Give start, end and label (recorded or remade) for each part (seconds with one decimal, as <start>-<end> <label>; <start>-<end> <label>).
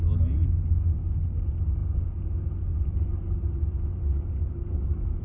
0.0-5.2 recorded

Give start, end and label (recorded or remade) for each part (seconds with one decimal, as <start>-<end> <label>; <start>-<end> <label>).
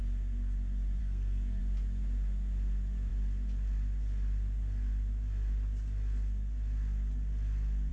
0.0-1.0 recorded; 1.0-1.6 remade; 1.6-7.9 recorded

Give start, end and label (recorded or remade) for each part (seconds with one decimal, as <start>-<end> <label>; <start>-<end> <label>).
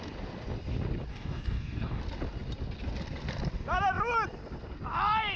0.0-1.1 recorded; 1.1-2.0 remade; 2.0-5.4 recorded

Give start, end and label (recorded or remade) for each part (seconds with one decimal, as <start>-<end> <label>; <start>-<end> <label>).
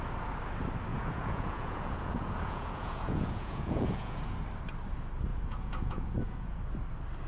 0.0-0.9 recorded; 0.9-4.2 remade; 4.2-5.3 recorded; 5.3-6.6 remade; 6.6-7.3 recorded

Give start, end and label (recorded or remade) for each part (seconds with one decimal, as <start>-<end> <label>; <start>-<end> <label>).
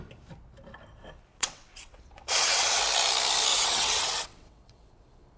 0.0-1.3 recorded; 1.3-2.8 remade; 2.8-3.5 recorded; 3.5-5.0 remade; 5.0-5.4 recorded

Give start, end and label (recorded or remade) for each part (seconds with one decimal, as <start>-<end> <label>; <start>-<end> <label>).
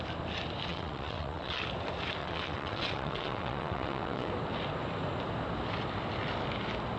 0.0-0.7 recorded; 0.7-1.6 remade; 1.6-2.2 recorded; 2.2-4.3 remade; 4.3-7.0 recorded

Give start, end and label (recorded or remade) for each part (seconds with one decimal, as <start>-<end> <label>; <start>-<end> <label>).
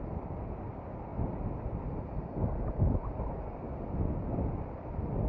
0.0-5.3 recorded